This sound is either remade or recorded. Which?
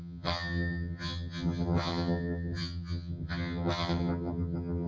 remade